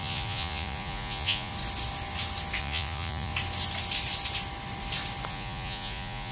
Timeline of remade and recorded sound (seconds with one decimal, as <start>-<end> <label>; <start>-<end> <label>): 0.0-1.5 remade; 1.5-2.6 recorded; 2.6-3.3 remade; 3.3-5.3 recorded; 5.3-6.3 remade